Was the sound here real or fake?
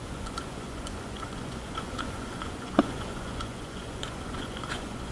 fake